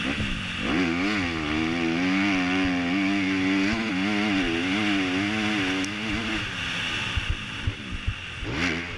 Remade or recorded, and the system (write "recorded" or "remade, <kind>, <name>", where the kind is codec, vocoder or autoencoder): recorded